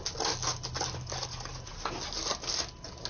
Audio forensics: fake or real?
real